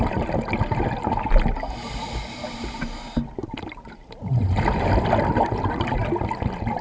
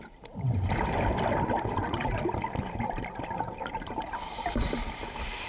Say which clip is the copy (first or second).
second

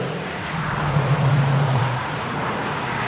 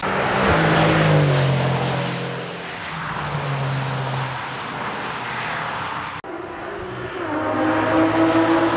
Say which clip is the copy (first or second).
first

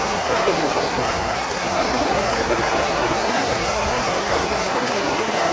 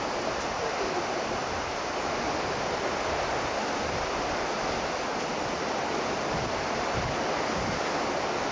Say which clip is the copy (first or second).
first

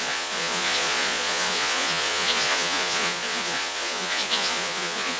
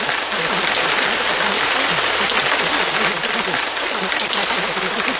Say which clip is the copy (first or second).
first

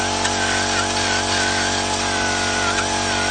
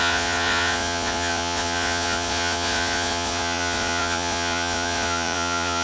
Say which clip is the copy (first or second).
second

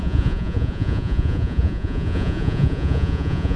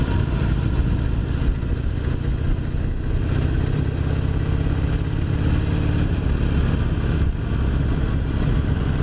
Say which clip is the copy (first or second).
first